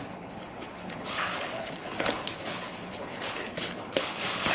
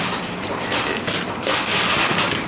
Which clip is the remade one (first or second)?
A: first